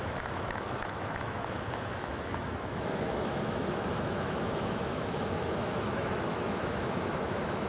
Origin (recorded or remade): remade